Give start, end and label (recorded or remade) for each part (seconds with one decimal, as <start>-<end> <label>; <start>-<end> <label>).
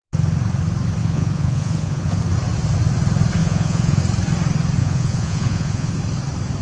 0.0-1.0 recorded; 1.0-2.2 remade; 2.2-3.4 recorded; 3.4-4.0 remade; 4.0-4.8 recorded; 4.8-5.9 remade; 5.9-6.6 recorded